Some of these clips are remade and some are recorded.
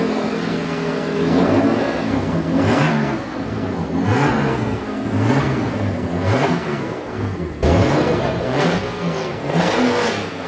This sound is remade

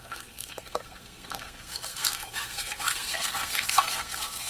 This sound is remade